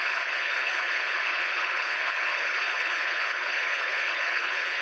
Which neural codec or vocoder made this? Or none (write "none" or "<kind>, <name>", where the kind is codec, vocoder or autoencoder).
codec, HILCodec